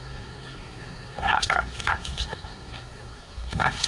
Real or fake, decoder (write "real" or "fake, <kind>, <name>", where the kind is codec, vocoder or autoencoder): fake, codec, SNAC